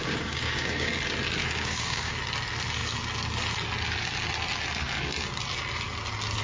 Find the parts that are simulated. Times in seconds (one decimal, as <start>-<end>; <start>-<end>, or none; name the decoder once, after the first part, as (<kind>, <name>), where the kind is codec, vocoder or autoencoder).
0.0-0.9 (codec, DAC); 1.4-2.1